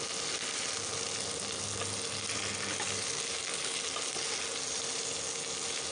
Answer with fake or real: real